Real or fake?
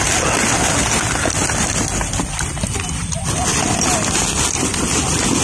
real